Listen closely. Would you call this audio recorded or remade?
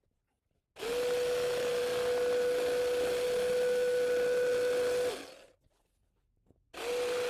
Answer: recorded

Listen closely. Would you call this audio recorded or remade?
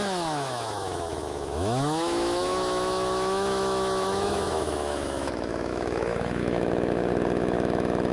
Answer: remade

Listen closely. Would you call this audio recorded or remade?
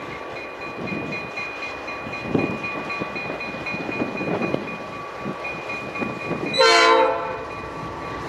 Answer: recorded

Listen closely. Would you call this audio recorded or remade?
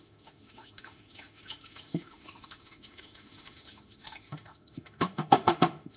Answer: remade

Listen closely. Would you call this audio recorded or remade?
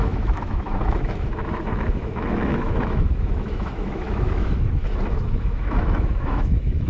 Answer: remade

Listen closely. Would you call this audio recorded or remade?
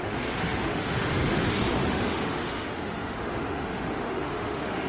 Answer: remade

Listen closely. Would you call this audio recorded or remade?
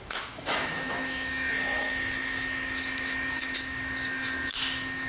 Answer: remade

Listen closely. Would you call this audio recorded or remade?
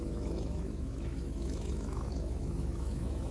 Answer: remade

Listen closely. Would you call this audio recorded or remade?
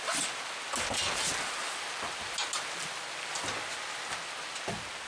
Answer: recorded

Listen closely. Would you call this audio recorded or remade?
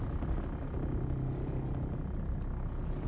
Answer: recorded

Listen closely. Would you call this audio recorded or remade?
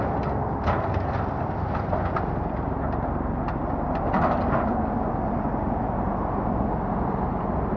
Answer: recorded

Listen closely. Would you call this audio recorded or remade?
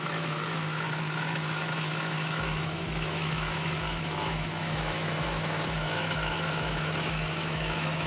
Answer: remade